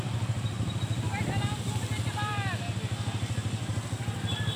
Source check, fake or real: real